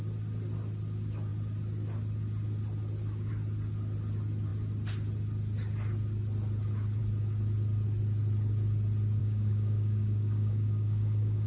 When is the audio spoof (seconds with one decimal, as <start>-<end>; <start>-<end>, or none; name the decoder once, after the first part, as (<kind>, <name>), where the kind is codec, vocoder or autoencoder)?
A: 9.2-11.5 (codec, DAC)